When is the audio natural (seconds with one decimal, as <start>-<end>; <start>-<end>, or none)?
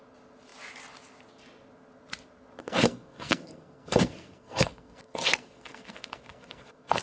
0.0-2.6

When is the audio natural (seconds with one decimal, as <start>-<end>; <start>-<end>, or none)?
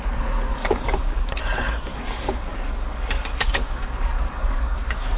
0.0-0.5; 1.4-1.9